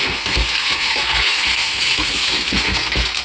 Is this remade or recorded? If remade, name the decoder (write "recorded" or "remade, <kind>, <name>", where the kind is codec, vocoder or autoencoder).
remade, codec, SNAC